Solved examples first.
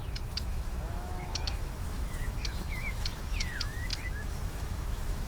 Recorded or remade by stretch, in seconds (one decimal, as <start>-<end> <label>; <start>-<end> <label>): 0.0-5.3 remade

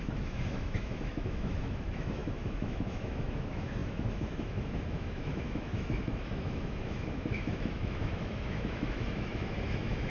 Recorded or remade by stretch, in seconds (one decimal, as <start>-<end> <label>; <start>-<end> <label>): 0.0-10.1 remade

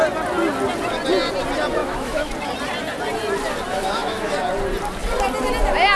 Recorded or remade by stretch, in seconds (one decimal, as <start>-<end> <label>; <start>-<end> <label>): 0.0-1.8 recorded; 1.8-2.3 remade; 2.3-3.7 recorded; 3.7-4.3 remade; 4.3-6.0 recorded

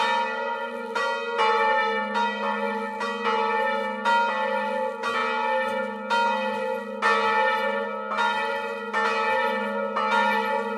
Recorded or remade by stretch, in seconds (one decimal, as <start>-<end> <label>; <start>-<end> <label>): 0.0-10.8 recorded

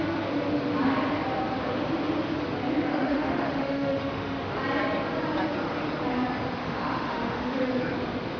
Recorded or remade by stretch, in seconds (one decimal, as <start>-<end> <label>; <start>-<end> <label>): 0.0-2.9 recorded; 2.9-4.5 remade; 4.5-6.6 recorded; 6.6-7.7 remade; 7.7-8.4 recorded